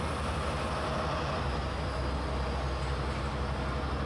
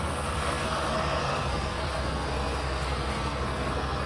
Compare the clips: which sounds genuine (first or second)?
first